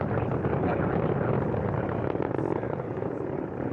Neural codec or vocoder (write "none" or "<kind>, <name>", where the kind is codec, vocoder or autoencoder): none